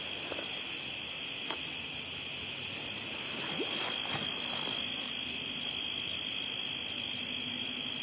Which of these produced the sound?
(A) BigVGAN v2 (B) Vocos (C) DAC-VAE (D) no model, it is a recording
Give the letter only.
D